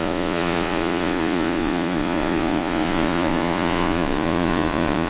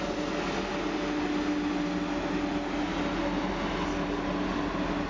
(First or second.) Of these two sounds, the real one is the second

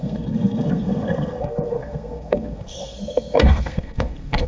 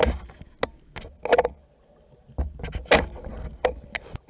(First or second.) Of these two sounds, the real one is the second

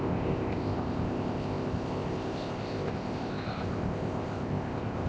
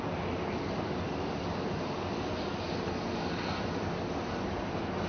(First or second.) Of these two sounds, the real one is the second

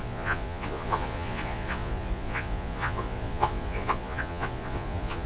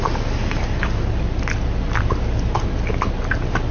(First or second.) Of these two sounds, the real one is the second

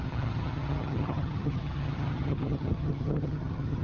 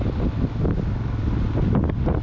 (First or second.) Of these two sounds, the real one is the second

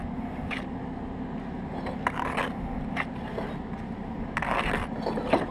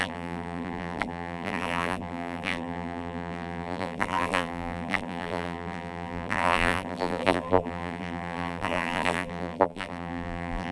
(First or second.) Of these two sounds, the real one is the first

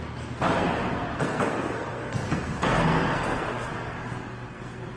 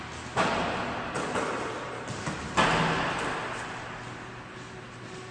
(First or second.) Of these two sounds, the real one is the second